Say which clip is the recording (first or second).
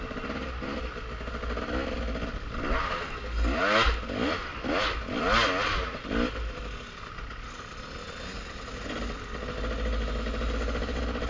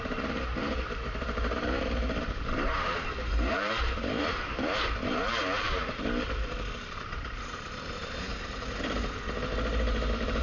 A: first